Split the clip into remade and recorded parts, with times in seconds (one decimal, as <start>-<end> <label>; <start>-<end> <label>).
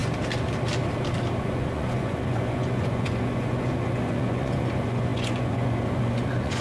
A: 0.0-1.4 recorded; 1.4-6.6 remade